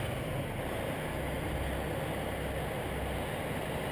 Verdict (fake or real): real